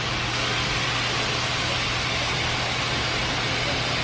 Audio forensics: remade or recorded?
recorded